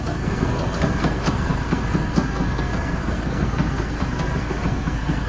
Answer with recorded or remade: remade